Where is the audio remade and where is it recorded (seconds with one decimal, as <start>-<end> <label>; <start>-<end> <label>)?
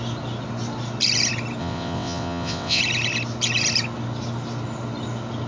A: 0.0-1.6 recorded; 1.6-2.8 remade; 2.8-5.5 recorded